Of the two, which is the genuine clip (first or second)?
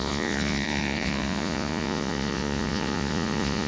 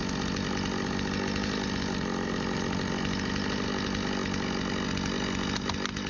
second